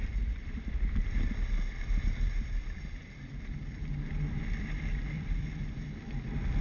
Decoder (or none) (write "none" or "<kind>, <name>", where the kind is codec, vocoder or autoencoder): vocoder, BigVGAN v2